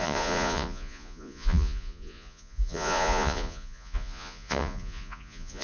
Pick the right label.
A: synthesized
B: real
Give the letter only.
A